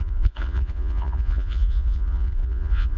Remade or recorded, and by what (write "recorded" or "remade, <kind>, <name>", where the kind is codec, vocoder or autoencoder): remade, vocoder, Vocos